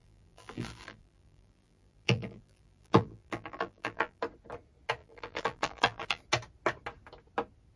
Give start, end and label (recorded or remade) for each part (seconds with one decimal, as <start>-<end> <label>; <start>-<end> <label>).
0.0-4.2 remade; 4.2-5.0 recorded; 5.0-6.2 remade; 6.2-7.8 recorded